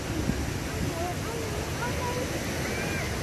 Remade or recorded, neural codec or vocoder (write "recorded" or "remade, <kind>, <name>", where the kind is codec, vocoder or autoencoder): recorded